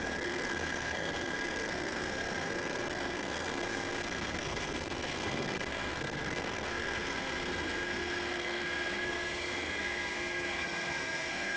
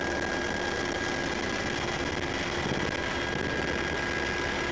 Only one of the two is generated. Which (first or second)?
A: first